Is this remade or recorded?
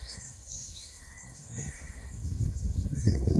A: remade